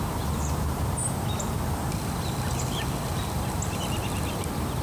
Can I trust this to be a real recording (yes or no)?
yes